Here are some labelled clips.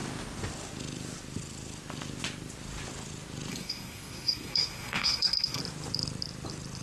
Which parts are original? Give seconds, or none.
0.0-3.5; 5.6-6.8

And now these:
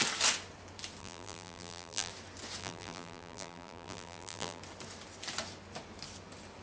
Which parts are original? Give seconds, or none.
0.0-1.0; 2.1-2.6; 4.6-6.6